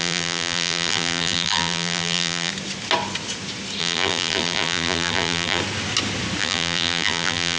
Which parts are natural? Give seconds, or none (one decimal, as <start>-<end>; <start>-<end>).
2.5-3.8; 5.6-6.4